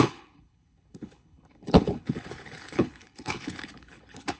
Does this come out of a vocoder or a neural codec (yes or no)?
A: yes